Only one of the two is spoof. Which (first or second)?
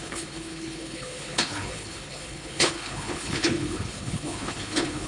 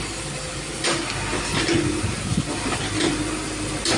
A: first